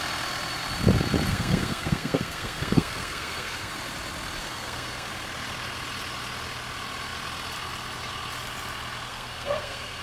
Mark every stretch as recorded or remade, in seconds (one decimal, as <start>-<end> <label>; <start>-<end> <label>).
0.0-1.3 recorded; 1.3-3.7 remade; 3.7-4.4 recorded; 4.4-5.1 remade; 5.1-9.1 recorded; 9.1-10.0 remade